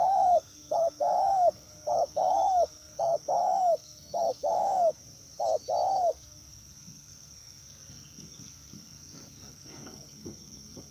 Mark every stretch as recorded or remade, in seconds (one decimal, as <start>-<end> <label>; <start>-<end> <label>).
0.0-5.0 remade; 5.0-5.9 recorded; 5.9-10.9 remade